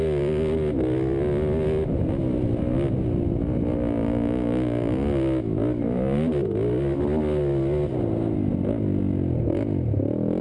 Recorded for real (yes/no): yes